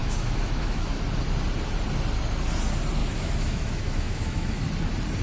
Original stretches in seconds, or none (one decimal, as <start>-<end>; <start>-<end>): 1.0-3.0; 4.7-5.2